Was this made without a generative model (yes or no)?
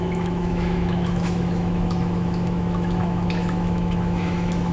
no